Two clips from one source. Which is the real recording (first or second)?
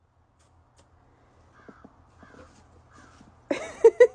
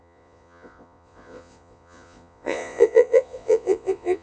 first